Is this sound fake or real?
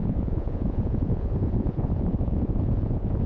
fake